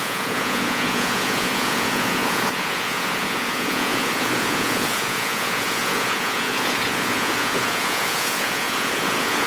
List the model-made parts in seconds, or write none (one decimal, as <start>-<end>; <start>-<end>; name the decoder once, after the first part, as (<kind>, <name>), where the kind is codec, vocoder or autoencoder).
0.0-9.5 (vocoder, Vocos)